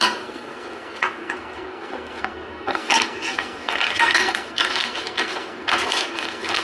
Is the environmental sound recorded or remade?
remade